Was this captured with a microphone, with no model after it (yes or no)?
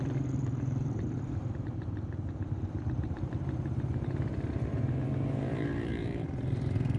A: no